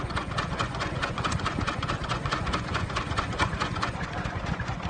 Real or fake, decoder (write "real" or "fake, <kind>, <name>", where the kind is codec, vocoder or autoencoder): fake, vocoder, Vocos